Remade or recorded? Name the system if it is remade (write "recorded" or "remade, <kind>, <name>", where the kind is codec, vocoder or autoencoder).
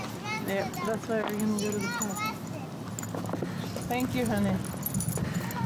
recorded